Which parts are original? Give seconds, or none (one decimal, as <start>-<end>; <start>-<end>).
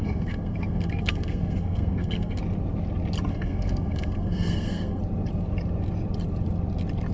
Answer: 2.4-3.3; 5.0-7.1